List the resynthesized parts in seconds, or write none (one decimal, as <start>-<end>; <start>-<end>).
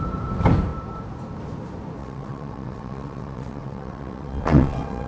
2.0-5.1